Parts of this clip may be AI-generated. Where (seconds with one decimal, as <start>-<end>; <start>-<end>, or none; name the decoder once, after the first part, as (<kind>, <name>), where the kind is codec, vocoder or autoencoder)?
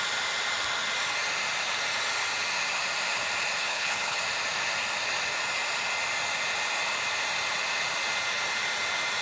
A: 3.6-4.2 (codec, HILCodec)